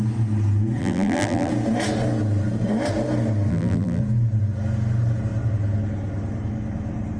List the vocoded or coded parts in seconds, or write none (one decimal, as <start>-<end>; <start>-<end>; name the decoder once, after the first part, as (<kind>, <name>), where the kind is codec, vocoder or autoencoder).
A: 0.8-1.5 (vocoder, BigVGAN v2); 3.5-4.0

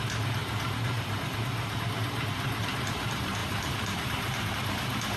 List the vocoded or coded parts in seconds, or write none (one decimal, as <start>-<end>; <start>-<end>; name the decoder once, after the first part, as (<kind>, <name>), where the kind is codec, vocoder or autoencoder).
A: 0.0-5.2 (vocoder, BigVGAN v2)

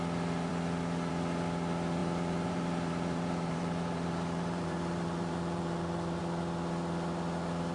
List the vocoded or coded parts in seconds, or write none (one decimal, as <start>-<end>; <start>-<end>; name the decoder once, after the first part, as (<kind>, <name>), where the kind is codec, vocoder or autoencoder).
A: 2.0-6.2 (vocoder, BigVGAN v2)

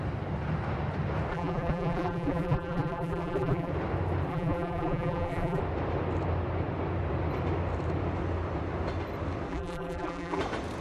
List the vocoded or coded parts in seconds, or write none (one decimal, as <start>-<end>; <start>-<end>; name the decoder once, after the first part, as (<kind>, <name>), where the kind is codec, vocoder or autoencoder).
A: 1.3-3.7 (vocoder, BigVGAN v2); 4.3-5.6; 9.5-10.4

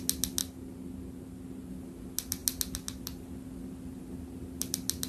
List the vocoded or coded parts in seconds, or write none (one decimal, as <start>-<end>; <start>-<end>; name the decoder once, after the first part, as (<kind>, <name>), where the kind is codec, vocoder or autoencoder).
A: none

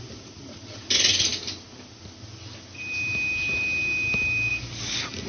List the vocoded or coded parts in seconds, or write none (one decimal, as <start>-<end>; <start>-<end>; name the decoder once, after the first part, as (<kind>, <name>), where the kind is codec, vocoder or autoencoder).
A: none

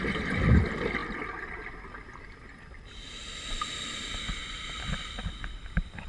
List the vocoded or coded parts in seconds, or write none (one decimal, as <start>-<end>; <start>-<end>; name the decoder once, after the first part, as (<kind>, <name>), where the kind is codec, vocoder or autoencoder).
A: 4.4-5.6 (vocoder, BigVGAN v2)